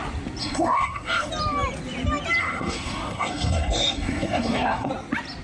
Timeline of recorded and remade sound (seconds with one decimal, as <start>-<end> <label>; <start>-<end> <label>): 0.0-0.4 recorded; 0.4-1.3 remade; 1.3-2.4 recorded; 2.4-4.9 remade; 4.9-5.4 recorded